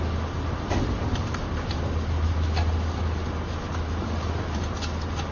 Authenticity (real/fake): real